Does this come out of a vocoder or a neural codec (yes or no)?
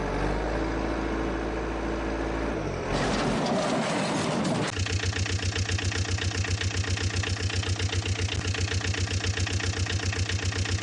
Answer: no